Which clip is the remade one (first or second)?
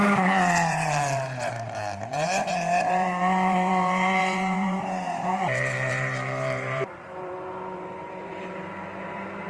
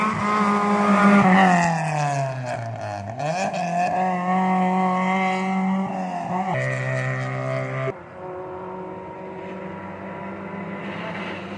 first